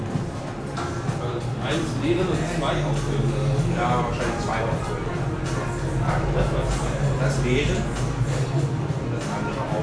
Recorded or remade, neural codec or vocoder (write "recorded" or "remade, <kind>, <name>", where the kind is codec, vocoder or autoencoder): recorded